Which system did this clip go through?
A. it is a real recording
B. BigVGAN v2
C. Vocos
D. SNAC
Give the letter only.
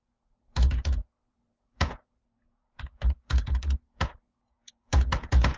C